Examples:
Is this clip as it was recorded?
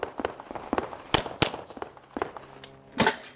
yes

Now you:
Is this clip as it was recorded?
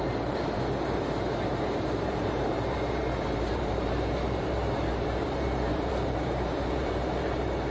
no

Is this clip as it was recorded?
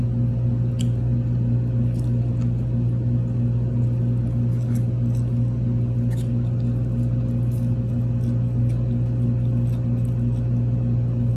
yes